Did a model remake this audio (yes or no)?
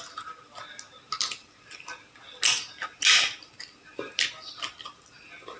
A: no